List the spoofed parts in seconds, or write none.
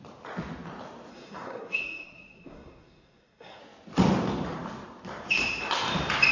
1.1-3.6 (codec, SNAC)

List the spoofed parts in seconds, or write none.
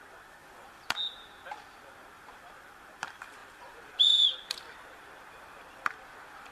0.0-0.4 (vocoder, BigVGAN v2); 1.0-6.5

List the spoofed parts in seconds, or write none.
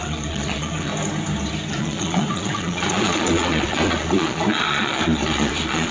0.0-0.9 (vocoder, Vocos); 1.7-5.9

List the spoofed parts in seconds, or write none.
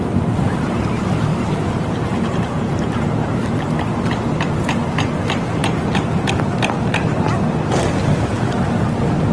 1.3-2.6 (vocoder, BigVGAN v2)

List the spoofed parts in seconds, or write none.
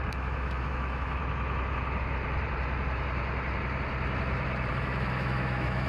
0.0-1.2 (autoencoder, DAC-VAE); 4.7-5.9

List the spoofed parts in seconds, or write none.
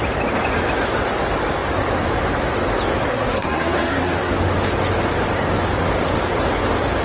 3.1-4.3 (codec, SNAC)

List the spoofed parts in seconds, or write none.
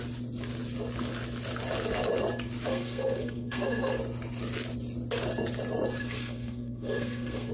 2.7-4.0 (codec, SNAC); 6.0-7.5